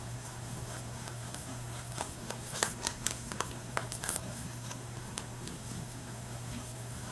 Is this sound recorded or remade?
remade